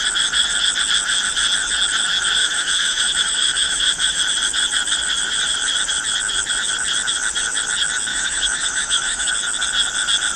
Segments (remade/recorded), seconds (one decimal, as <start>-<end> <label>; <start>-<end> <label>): 0.0-2.4 recorded; 2.4-4.2 remade; 4.2-8.1 recorded; 8.1-9.3 remade; 9.3-10.4 recorded